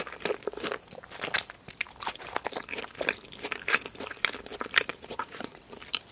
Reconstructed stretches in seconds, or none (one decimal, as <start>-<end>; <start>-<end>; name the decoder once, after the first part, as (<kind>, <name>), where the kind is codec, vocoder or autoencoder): 4.9-5.6 (vocoder, Vocos)